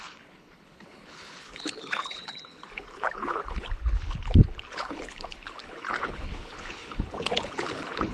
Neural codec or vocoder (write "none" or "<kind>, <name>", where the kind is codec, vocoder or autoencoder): codec, HILCodec